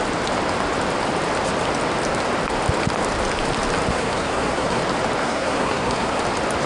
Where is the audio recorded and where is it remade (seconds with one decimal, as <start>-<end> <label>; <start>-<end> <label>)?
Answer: 0.0-3.9 recorded; 3.9-4.8 remade; 4.8-5.2 recorded; 5.2-6.2 remade; 6.2-6.7 recorded